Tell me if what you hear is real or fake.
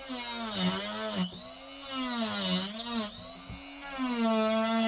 real